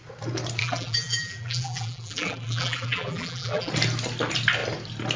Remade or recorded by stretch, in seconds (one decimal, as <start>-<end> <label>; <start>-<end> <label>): 0.0-0.6 recorded; 0.6-3.7 remade; 3.7-5.2 recorded